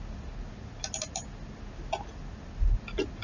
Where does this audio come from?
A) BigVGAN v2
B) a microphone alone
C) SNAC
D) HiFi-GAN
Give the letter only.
B